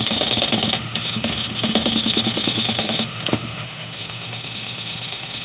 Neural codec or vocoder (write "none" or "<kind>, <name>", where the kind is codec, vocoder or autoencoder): autoencoder, DAC-VAE